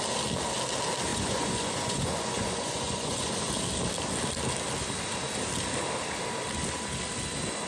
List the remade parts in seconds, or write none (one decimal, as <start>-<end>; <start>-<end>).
1.1-3.5